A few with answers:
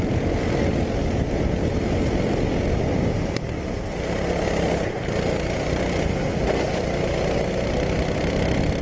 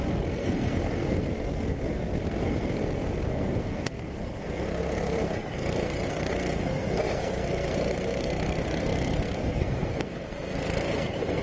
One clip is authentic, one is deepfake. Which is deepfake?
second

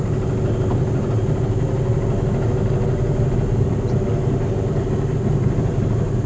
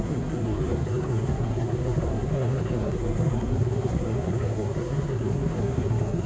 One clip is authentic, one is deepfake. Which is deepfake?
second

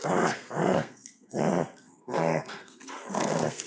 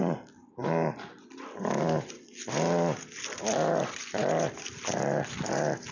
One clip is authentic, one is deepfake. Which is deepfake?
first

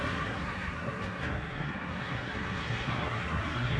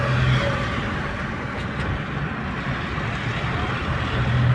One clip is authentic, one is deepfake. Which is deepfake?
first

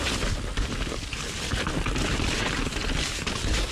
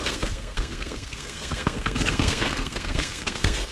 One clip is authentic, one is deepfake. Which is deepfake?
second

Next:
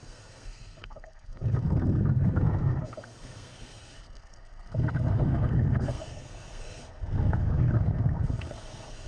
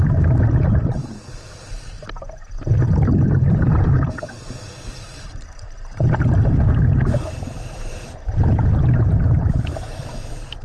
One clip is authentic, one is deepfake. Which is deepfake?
first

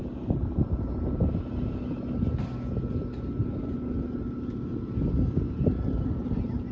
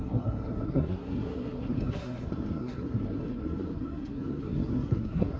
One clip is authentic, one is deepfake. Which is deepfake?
second